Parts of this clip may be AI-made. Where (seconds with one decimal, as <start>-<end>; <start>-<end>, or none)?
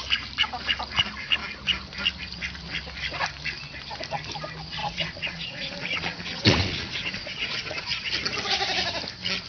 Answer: 4.8-8.1